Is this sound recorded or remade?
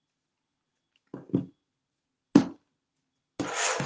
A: recorded